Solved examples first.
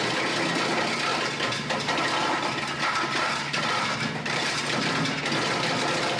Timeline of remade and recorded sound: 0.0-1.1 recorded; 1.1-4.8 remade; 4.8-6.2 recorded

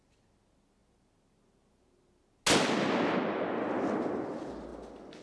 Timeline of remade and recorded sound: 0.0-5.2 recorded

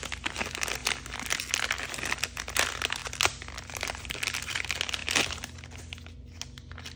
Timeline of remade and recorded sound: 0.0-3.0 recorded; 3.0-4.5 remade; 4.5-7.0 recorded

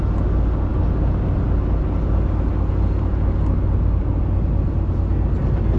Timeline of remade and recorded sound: 0.0-5.8 recorded